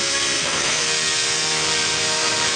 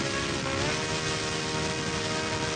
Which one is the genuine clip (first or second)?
second